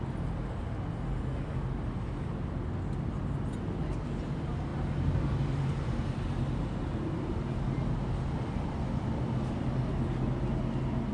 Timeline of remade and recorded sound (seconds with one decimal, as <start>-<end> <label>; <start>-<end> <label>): 0.0-11.1 recorded